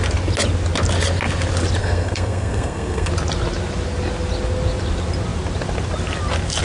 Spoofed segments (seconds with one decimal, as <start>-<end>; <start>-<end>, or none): 1.8-3.1